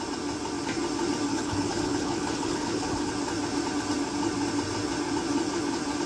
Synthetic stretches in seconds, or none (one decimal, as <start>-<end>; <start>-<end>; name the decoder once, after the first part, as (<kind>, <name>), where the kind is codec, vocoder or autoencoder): 1.3-3.1 (codec, HILCodec)